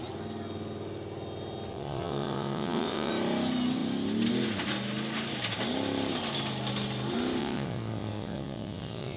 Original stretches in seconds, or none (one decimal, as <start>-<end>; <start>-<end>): 0.0-1.7; 3.1-7.4